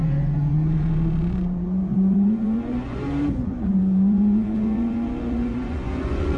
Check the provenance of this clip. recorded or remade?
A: remade